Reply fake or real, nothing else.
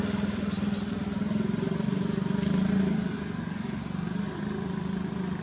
real